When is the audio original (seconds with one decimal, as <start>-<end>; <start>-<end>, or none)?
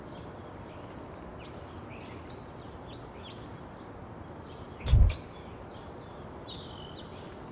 0.0-7.5